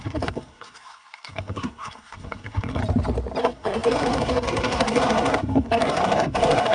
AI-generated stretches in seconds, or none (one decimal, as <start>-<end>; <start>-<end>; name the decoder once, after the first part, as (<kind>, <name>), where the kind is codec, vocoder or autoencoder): 0.0-2.8 (codec, SNAC); 3.4-6.7